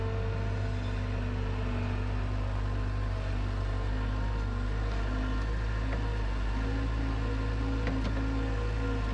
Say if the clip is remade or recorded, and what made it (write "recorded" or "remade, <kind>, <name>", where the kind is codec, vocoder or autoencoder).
recorded